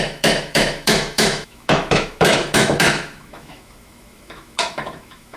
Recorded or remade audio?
remade